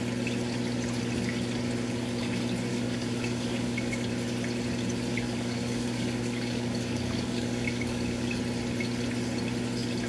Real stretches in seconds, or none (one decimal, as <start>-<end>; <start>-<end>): 0.0-2.7; 4.1-5.1; 8.4-10.1